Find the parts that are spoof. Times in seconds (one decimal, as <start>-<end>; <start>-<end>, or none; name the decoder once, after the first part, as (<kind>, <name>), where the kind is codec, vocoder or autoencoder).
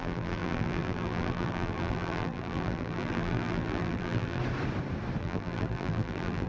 0.0-4.4 (vocoder, BigVGAN v2); 5.2-6.5